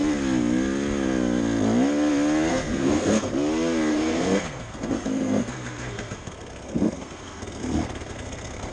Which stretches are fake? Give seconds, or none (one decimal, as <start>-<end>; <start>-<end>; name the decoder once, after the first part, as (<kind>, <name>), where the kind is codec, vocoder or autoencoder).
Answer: 2.5-3.3 (codec, SNAC); 3.9-8.7